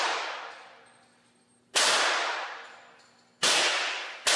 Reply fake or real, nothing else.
real